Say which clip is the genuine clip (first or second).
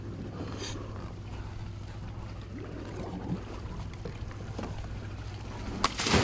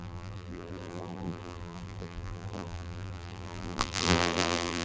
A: first